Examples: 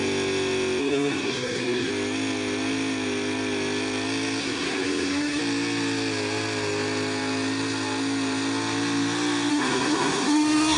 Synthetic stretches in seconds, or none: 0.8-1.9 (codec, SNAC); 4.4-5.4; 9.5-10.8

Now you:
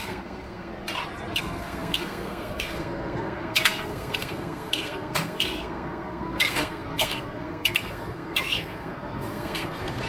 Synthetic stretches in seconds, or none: 0.0-0.7 (codec, SNAC); 1.4-10.1